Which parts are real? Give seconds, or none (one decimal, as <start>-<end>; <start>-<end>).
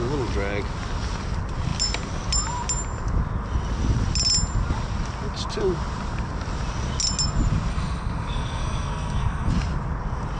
0.0-7.7; 9.5-10.4